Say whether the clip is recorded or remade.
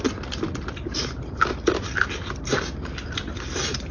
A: recorded